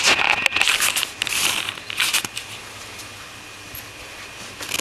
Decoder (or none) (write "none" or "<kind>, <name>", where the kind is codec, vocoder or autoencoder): none